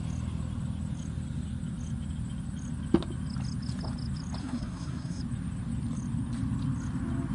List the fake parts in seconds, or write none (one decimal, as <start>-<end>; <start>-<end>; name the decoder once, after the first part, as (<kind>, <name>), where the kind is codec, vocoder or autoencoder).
4.4-5.2 (codec, SNAC)